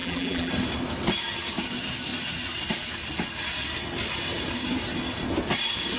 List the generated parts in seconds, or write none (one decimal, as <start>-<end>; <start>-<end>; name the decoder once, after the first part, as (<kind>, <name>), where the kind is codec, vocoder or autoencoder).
0.0-0.5 (vocoder, BigVGAN v2)